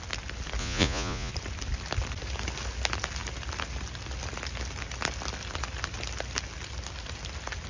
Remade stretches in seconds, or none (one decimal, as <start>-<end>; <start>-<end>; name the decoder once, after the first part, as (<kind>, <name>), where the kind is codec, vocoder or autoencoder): 0.6-1.3 (vocoder, Vocos)